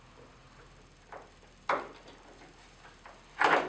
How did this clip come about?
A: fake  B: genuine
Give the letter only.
B